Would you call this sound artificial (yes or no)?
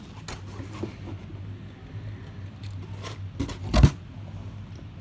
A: no